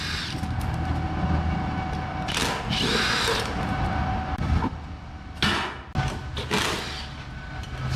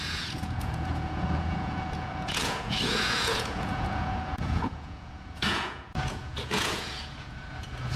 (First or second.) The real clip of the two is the first